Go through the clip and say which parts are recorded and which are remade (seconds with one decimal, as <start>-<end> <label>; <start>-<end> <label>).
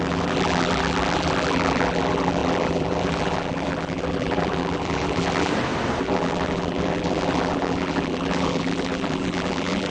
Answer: 0.0-5.5 remade; 5.5-6.0 recorded; 6.0-9.9 remade